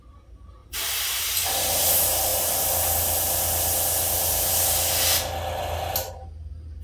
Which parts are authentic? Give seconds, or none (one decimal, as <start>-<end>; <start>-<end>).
0.0-0.6; 1.8-6.8